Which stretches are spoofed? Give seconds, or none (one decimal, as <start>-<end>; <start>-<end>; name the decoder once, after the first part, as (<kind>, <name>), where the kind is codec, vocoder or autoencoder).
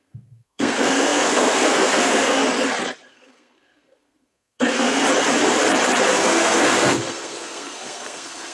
0.0-2.4 (codec, SNAC); 3.1-5.0; 6.1-8.5